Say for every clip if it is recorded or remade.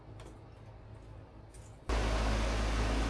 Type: recorded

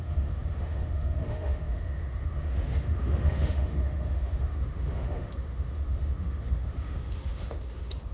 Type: remade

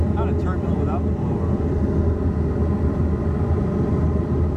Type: recorded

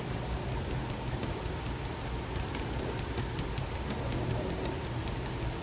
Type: recorded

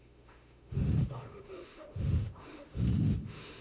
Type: remade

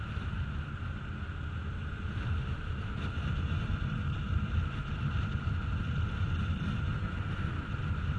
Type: recorded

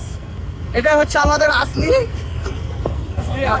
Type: remade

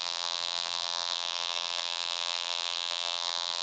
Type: remade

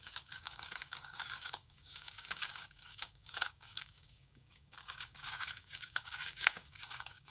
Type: remade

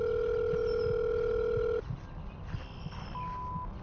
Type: recorded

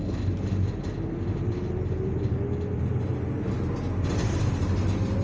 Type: recorded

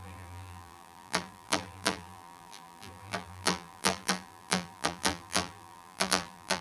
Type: remade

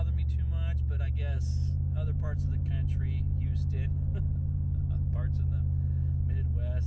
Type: recorded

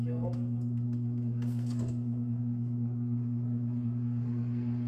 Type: remade